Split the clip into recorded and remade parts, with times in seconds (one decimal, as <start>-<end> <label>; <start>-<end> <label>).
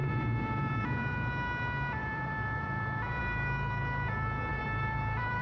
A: 0.0-0.8 remade; 0.8-2.0 recorded; 2.0-3.2 remade; 3.2-4.5 recorded; 4.5-5.4 remade